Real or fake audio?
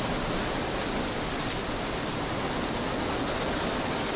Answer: real